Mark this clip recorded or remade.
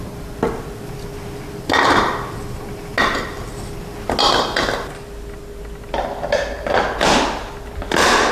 recorded